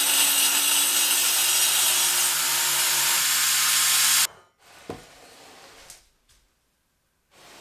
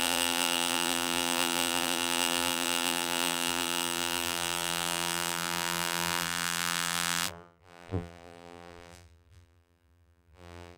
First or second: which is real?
first